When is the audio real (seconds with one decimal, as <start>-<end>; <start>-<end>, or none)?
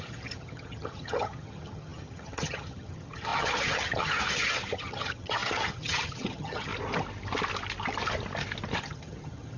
6.7-8.8